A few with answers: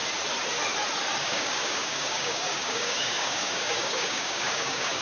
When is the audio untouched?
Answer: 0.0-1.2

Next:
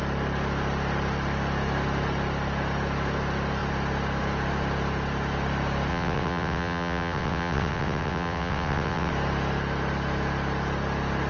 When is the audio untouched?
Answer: 0.0-5.9; 9.1-11.3

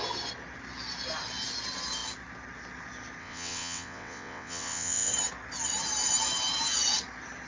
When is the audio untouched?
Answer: 0.0-3.2; 5.1-7.5